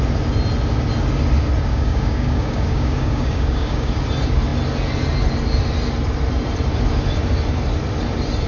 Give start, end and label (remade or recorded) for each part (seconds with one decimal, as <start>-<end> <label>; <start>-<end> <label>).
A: 0.0-1.7 recorded; 1.7-3.9 remade; 3.9-8.5 recorded